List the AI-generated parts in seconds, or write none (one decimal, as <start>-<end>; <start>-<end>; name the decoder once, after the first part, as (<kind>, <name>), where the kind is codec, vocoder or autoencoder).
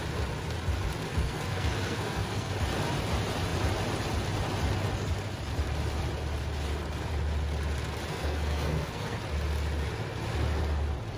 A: 1.1-2.5 (codec, SNAC); 8.1-9.2